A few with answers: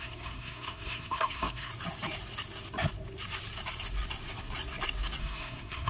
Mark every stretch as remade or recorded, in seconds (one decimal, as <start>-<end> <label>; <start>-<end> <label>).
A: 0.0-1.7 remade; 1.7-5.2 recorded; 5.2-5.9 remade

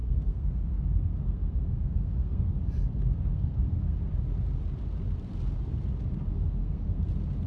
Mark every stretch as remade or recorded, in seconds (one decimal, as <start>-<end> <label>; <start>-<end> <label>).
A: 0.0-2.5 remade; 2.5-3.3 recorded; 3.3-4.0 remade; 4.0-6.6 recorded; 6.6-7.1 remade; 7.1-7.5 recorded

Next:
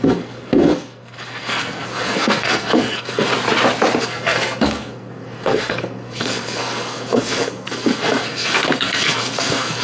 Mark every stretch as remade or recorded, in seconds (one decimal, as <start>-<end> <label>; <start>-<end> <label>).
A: 0.0-3.3 remade; 3.3-4.0 recorded; 4.0-9.8 remade

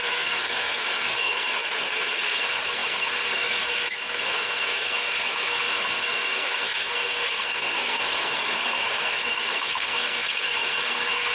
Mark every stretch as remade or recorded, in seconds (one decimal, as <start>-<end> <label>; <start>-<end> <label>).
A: 0.0-11.3 remade

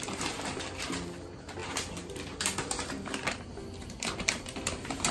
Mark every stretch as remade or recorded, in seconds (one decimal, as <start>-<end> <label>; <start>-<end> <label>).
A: 0.0-5.1 recorded

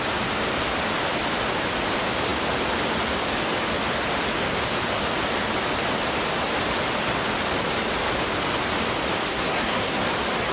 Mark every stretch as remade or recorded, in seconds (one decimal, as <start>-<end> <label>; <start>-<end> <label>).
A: 0.0-9.3 recorded; 9.3-10.0 remade; 10.0-10.5 recorded